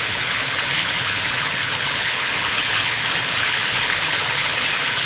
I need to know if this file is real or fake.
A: fake